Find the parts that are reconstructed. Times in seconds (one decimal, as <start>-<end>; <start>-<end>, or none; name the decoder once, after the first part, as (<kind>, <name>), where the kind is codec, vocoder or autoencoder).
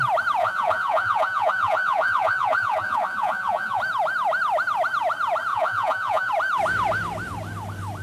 0.4-3.8 (vocoder, Vocos); 5.5-6.3